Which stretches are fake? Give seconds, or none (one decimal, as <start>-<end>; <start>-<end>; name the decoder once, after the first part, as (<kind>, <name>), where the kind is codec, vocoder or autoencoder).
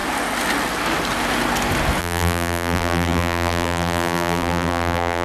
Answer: 2.0-5.2 (vocoder, BigVGAN v2)